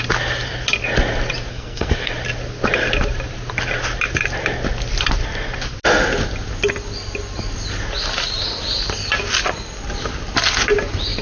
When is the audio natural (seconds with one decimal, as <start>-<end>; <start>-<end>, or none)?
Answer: 0.0-1.5; 2.1-11.2